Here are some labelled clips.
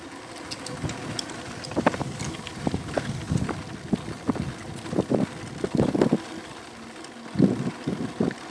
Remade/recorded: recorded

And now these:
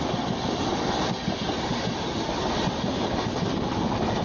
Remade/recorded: recorded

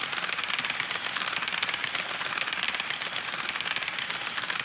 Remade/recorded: recorded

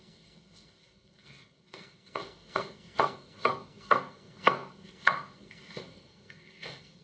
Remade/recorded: remade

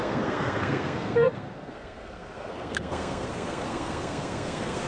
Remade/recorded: remade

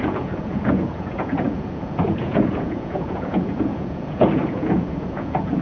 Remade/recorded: remade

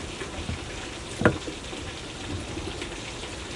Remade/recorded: recorded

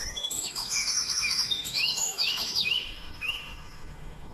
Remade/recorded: remade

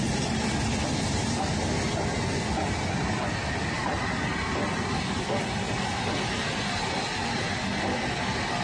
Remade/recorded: recorded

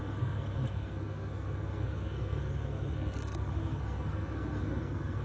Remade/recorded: remade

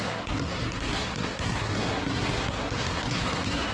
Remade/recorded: remade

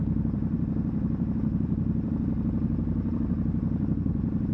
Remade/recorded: remade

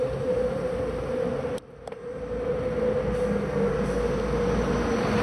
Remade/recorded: recorded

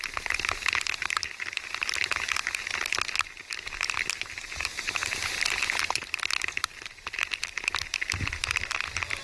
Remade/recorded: recorded